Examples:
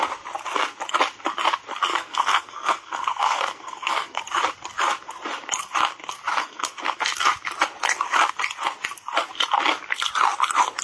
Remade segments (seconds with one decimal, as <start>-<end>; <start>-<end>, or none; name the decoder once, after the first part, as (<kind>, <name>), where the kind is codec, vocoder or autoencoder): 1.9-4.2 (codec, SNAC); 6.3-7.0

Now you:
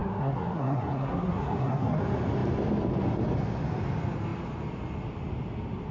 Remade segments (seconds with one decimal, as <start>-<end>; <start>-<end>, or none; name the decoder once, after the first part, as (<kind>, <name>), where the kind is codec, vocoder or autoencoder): 0.0-2.0 (codec, SNAC)

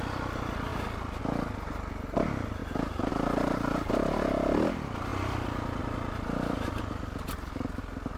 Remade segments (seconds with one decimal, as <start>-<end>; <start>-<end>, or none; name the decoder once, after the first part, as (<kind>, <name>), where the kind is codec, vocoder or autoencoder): none

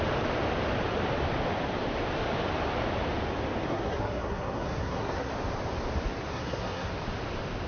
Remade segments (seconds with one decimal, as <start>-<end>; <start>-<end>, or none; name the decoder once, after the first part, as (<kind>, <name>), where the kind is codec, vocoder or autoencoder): 3.7-5.3 (codec, SNAC); 6.3-6.9

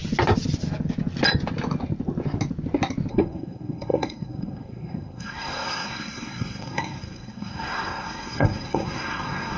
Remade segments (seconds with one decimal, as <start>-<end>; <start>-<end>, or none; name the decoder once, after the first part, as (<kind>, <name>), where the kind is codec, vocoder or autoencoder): 3.1-9.6 (codec, SNAC)

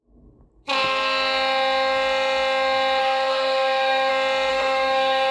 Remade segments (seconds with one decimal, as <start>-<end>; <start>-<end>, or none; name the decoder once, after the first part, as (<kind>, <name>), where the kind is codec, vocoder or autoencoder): 3.0-4.1 (codec, SNAC); 4.5-5.3